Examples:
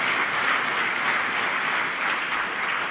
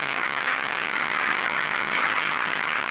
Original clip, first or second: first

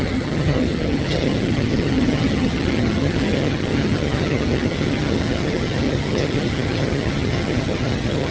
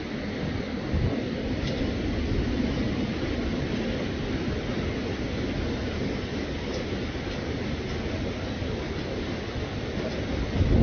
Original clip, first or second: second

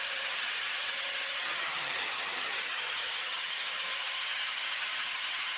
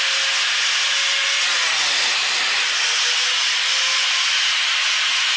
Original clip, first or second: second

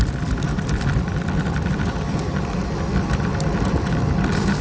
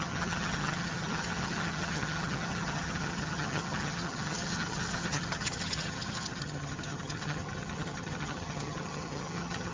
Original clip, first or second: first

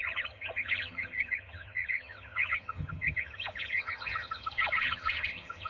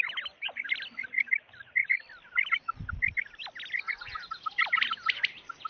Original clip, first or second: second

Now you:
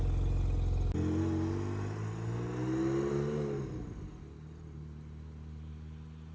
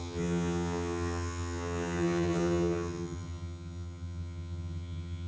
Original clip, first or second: first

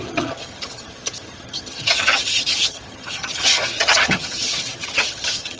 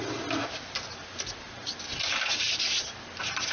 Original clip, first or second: second